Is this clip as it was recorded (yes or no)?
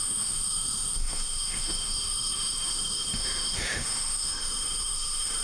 no